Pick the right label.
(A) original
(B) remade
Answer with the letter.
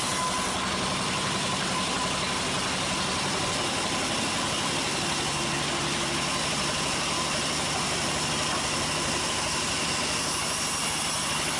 A